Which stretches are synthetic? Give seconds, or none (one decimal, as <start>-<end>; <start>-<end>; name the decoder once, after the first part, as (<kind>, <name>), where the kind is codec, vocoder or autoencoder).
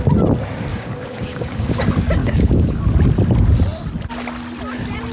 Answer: 0.7-1.8 (codec, DAC); 2.2-2.8